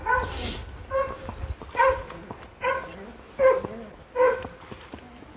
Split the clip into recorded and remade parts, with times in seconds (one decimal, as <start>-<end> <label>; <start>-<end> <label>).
0.0-5.4 recorded